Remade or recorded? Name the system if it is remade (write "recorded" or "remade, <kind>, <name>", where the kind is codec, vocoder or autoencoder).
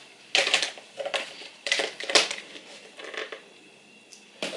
recorded